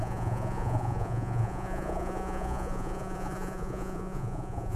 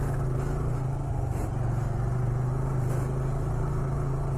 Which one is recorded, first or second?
second